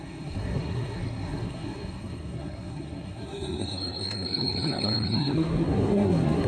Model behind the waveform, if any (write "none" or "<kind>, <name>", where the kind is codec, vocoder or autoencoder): codec, SNAC